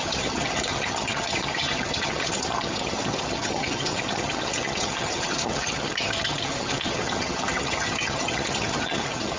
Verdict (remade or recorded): remade